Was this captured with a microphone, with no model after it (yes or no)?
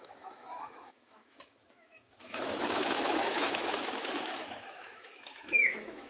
no